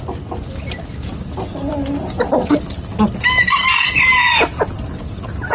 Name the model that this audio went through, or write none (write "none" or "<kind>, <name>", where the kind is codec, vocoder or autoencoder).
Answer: none